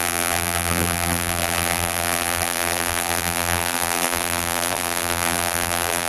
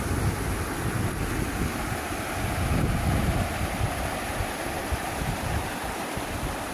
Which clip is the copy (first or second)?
first